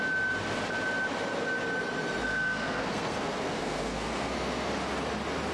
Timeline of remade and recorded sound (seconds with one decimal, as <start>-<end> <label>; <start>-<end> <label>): 0.0-2.2 recorded; 2.2-4.7 remade; 4.7-5.5 recorded